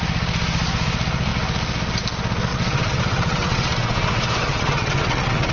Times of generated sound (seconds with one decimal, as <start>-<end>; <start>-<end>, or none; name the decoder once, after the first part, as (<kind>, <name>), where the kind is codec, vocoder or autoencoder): 2.5-5.5 (vocoder, WaveNeXt)

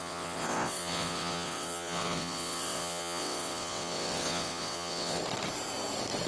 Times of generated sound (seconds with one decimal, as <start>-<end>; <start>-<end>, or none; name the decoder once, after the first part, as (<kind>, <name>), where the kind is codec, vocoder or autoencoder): 0.0-5.2 (vocoder, WaveNeXt)

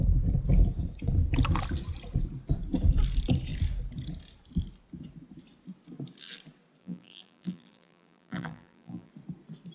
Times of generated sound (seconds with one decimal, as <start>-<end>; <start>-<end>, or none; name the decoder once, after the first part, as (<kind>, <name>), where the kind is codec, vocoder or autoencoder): 6.8-9.1 (vocoder, BigVGAN v2)

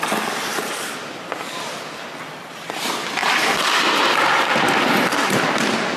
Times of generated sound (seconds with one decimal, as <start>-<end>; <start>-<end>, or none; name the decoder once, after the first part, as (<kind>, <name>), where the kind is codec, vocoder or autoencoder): 0.5-1.3 (vocoder, BigVGAN v2); 3.2-5.3

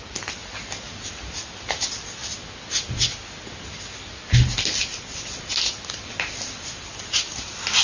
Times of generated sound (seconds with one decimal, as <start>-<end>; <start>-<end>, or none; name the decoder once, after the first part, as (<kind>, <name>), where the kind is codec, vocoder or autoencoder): none